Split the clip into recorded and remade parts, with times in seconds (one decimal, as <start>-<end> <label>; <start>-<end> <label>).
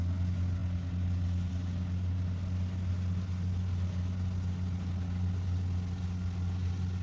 0.0-7.0 recorded